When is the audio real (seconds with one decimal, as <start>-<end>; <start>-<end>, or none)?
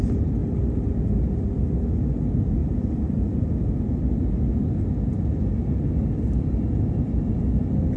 0.0-8.0